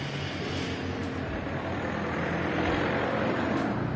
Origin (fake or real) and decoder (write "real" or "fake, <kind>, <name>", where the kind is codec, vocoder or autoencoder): real